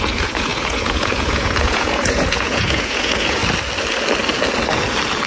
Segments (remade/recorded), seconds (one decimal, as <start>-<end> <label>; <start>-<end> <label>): 0.0-3.4 remade; 3.4-5.3 recorded